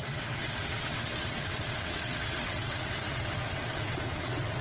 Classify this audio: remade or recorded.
remade